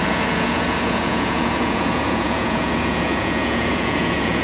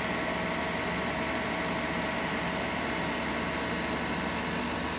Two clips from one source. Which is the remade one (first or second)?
first